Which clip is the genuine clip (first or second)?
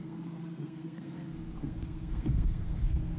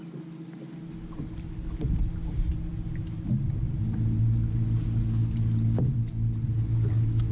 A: second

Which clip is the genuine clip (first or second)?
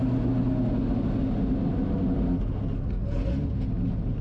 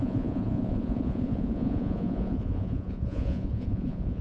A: first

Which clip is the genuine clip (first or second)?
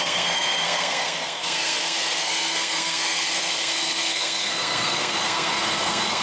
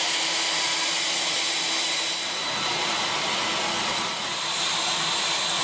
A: second